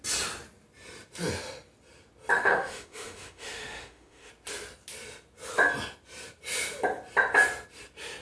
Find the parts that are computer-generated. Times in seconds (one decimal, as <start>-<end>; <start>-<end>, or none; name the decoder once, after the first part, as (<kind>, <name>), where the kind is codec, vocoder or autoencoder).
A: 2.3-4.3 (autoencoder, DAC-VAE)